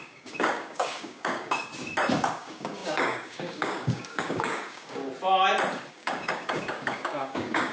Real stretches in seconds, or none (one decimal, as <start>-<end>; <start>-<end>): 1.7-2.3; 5.0-5.9

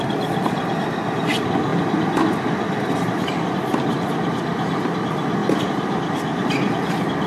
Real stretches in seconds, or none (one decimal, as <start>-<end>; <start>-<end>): 0.0-7.3

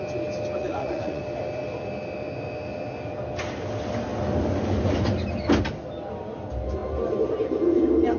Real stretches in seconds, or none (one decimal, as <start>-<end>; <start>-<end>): 0.0-0.6; 1.2-8.2